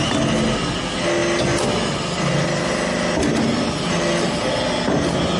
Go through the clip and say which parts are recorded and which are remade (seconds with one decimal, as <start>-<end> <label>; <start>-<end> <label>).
0.0-5.4 recorded